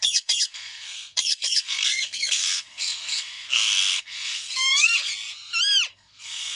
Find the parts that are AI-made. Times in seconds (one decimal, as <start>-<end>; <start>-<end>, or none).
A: 0.0-5.1; 5.9-6.6